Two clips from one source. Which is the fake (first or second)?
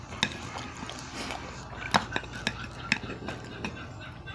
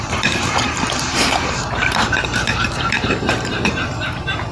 second